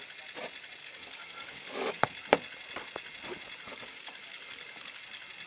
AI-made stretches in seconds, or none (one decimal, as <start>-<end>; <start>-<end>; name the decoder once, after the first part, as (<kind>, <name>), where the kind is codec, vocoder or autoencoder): 0.8-2.0 (codec, DAC); 3.7-5.0